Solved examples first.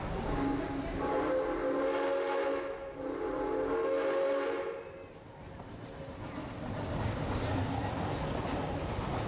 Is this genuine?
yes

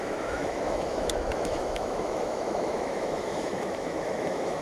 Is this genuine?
no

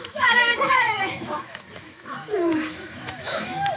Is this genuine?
no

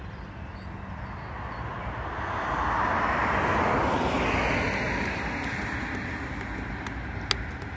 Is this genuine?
yes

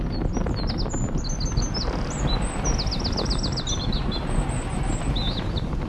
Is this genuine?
yes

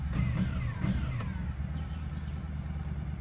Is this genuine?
yes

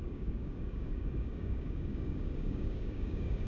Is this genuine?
no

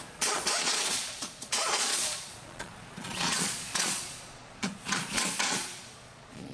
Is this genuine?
no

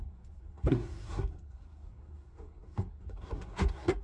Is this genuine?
no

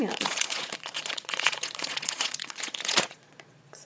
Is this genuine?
no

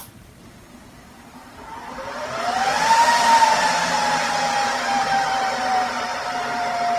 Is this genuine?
no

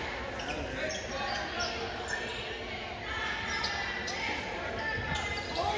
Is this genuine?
yes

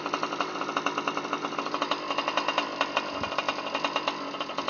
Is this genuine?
yes